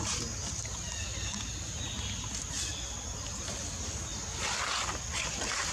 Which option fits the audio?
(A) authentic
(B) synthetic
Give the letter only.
A